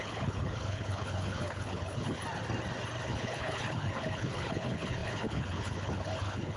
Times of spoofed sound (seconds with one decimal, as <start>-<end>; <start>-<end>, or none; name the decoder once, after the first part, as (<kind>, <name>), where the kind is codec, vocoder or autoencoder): 0.0-2.2 (codec, HILCodec); 3.1-6.6